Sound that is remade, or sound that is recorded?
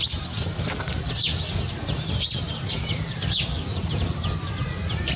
recorded